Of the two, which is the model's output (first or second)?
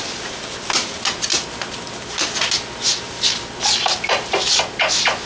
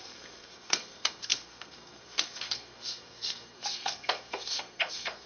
second